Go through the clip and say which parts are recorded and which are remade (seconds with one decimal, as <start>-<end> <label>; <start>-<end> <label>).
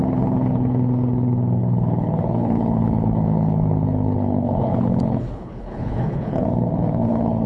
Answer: 0.0-7.5 remade